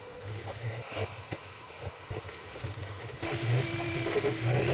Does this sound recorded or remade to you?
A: remade